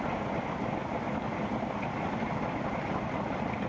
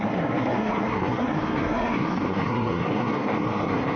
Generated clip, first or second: second